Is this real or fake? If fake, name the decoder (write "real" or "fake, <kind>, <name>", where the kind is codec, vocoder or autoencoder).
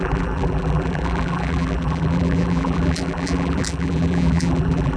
fake, vocoder, BigVGAN v2